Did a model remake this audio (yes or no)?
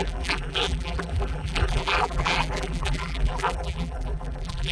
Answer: yes